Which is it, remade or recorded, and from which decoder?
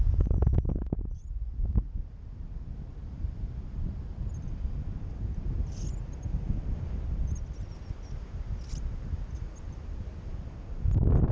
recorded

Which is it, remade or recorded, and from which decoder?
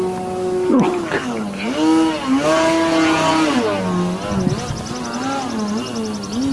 recorded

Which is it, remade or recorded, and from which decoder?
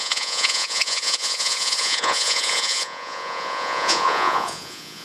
remade, vocoder, Vocos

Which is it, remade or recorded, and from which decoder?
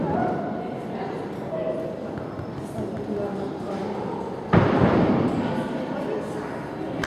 recorded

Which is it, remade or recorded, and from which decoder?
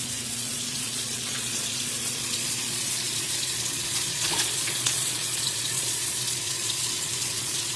remade, vocoder, Vocos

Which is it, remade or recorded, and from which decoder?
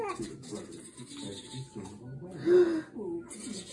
recorded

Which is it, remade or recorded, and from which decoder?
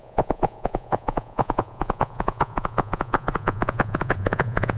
remade, vocoder, Vocos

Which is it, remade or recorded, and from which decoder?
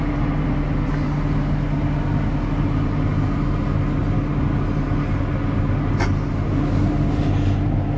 recorded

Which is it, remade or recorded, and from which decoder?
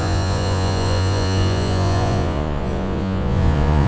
remade, vocoder, Vocos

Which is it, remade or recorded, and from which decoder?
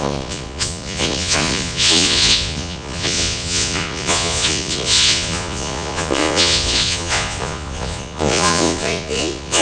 remade, vocoder, Vocos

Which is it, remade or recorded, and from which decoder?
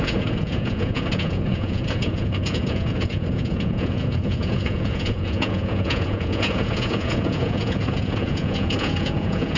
remade, vocoder, Vocos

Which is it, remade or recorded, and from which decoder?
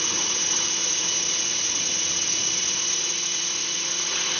remade, vocoder, Vocos